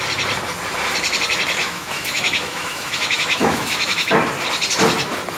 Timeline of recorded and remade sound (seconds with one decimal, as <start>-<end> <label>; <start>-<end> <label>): 0.0-1.6 recorded; 1.6-4.1 remade; 4.1-5.4 recorded